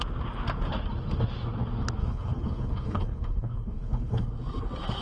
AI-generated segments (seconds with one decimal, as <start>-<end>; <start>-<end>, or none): 2.0-4.3